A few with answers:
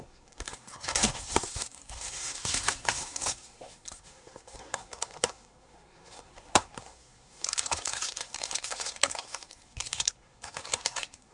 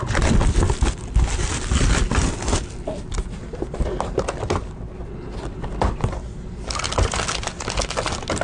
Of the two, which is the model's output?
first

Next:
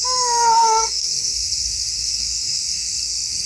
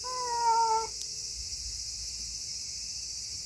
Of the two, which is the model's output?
first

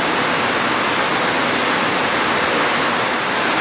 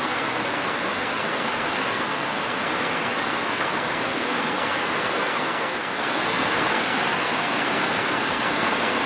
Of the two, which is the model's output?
second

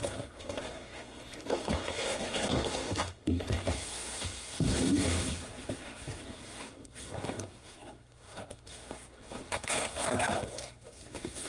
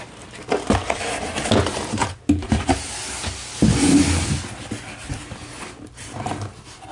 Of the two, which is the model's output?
first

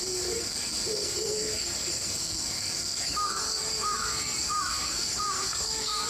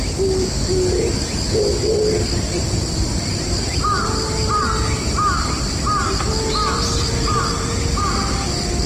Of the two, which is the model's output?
first